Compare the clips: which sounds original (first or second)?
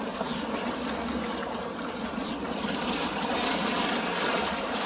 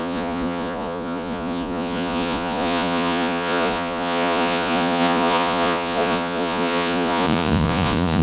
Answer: first